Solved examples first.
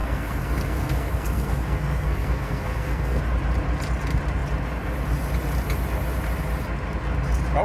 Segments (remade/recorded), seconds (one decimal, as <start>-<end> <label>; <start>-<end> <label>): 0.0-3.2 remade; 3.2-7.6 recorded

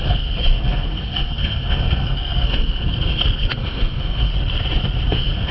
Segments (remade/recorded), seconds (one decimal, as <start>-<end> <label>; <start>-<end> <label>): 0.0-4.3 remade; 4.3-5.1 recorded; 5.1-5.5 remade

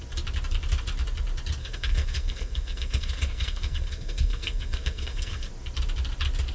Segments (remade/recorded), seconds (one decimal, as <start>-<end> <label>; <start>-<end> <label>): 0.0-1.6 recorded; 1.6-5.5 remade; 5.5-6.5 recorded

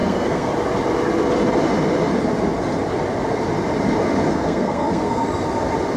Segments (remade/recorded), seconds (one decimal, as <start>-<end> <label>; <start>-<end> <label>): 0.0-0.5 remade; 0.5-4.3 recorded; 4.3-5.2 remade; 5.2-6.0 recorded

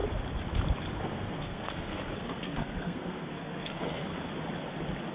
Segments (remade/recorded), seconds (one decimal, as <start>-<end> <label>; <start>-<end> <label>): 0.0-1.0 recorded; 1.0-4.1 remade; 4.1-5.1 recorded

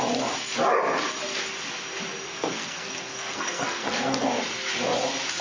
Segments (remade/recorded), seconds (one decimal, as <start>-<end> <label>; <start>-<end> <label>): 0.0-2.3 recorded; 2.3-4.4 remade; 4.4-5.4 recorded